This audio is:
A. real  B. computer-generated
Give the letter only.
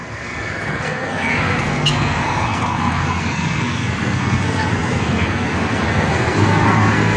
B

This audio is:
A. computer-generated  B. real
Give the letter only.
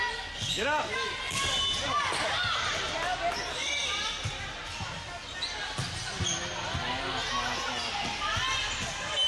B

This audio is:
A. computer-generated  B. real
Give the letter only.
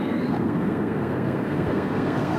A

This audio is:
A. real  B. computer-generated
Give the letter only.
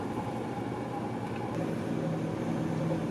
A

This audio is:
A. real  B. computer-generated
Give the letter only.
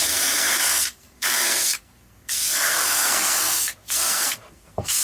B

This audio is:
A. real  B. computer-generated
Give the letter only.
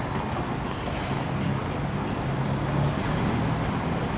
A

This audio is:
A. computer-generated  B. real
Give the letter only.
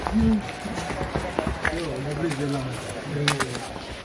B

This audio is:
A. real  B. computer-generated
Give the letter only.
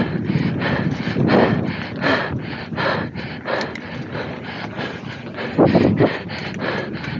A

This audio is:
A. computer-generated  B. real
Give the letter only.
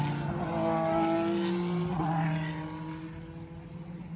B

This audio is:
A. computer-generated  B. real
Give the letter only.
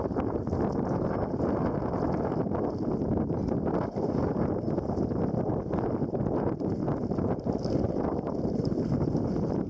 B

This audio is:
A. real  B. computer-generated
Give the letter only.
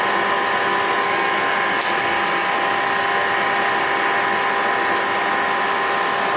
A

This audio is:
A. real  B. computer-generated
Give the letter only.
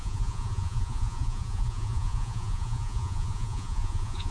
B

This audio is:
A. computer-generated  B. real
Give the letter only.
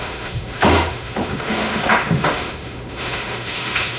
A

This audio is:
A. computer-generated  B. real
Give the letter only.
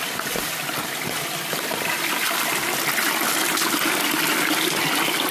B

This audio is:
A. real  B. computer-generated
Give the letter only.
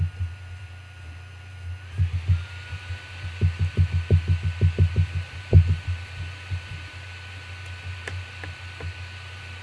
A